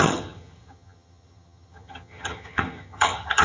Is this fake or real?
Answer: fake